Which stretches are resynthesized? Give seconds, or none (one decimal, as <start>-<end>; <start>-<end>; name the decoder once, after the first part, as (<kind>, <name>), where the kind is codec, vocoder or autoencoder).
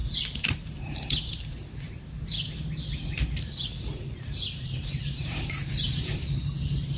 0.0-1.1 (vocoder, BigVGAN v2); 3.7-6.1